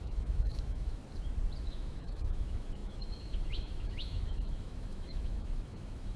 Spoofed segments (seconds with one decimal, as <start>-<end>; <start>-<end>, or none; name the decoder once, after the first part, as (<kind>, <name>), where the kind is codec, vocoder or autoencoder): 0.0-1.0 (autoencoder, DAC-VAE); 1.6-6.2